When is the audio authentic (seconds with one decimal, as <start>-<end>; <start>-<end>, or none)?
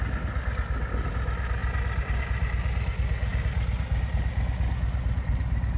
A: 0.0-5.8